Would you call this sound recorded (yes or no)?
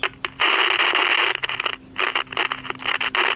yes